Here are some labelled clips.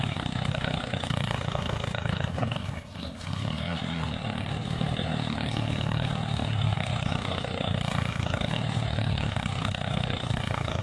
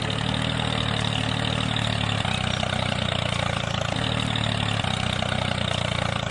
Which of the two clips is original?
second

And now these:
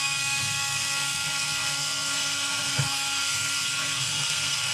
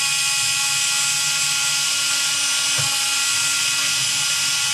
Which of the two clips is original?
second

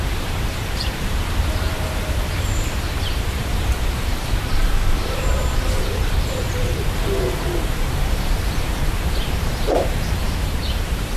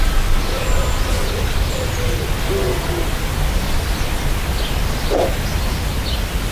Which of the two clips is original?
second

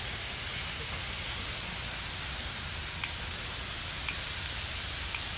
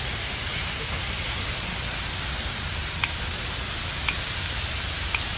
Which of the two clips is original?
first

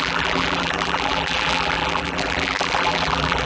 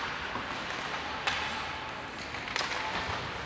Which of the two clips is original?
second